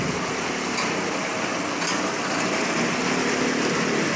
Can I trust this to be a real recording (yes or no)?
yes